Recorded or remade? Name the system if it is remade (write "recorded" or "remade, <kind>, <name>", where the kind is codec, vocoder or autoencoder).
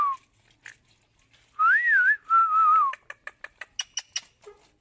recorded